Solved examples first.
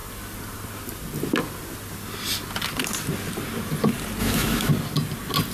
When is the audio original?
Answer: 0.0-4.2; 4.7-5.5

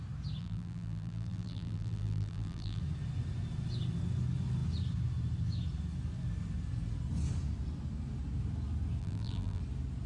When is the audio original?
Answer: 0.0-0.4; 2.8-9.0; 9.6-10.1

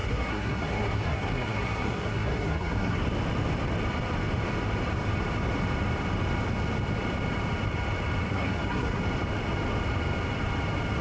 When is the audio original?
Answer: 3.0-8.2; 9.0-11.0

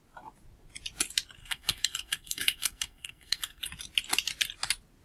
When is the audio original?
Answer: 0.0-1.4; 3.6-5.0

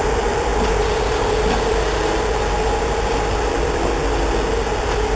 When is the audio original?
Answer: 4.0-4.8

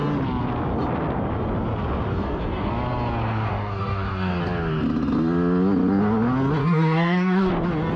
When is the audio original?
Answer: 0.0-2.1; 2.7-3.5; 4.4-6.6; 7.5-8.0

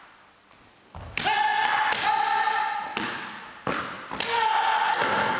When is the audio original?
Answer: 0.0-5.4